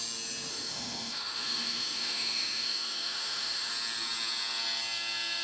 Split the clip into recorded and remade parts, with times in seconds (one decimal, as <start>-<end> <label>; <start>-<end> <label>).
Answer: 0.0-0.5 recorded; 0.5-3.7 remade; 3.7-5.4 recorded